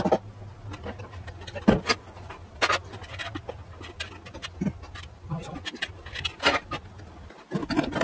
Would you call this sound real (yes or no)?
yes